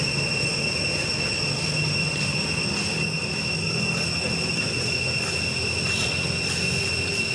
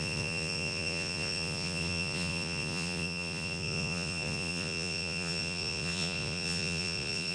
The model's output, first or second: second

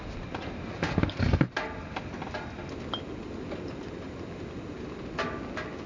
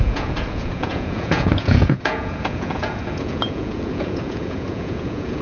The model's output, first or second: second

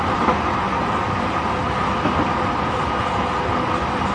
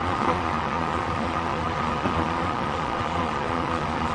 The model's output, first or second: second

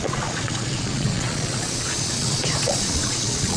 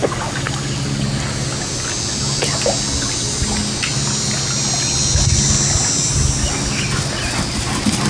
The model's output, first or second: first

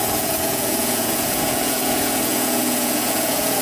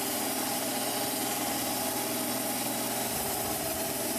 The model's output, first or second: first